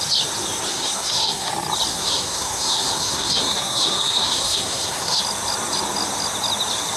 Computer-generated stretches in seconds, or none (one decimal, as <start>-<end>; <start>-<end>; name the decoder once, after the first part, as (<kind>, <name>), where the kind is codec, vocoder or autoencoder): 0.7-1.5 (codec, SNAC); 1.9-5.2